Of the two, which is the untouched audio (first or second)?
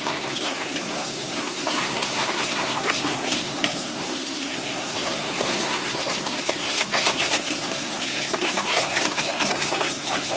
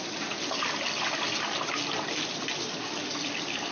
second